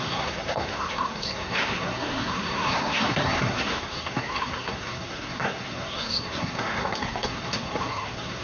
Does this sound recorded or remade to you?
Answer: remade